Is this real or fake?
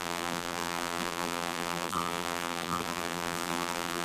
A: fake